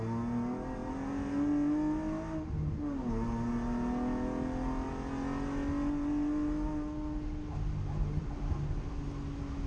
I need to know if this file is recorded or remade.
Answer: recorded